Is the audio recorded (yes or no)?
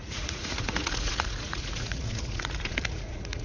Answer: no